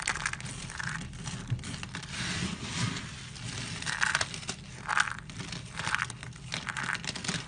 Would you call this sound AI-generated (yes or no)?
no